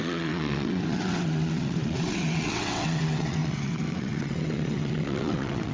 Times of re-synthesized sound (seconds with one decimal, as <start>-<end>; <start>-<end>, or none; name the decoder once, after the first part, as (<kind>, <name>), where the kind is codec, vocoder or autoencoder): 0.0-5.7 (vocoder, WaveNeXt)